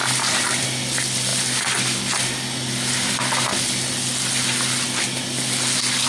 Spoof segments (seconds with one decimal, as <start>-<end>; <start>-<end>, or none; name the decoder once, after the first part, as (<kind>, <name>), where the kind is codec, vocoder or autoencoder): none